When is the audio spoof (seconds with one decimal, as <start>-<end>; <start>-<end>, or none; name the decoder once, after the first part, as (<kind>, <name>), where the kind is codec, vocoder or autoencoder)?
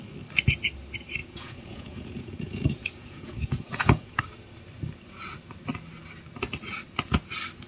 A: 1.2-4.2 (vocoder, Vocos)